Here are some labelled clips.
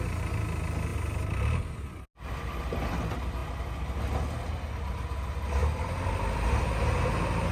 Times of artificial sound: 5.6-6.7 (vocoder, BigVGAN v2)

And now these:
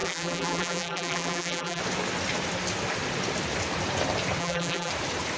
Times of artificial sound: 0.0-1.8 (vocoder, BigVGAN v2); 4.4-4.9